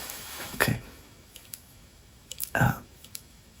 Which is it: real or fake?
fake